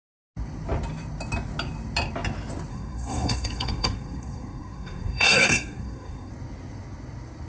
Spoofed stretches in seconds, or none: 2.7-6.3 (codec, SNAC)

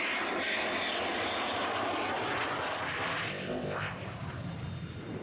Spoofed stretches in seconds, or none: 3.3-4.0 (codec, ZipCodec)